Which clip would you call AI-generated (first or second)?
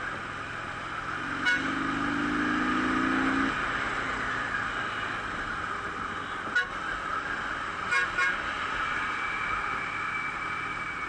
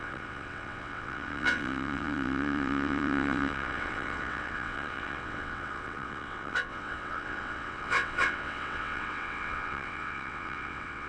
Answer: second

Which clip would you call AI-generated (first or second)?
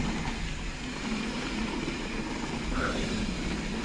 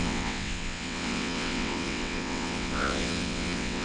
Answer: second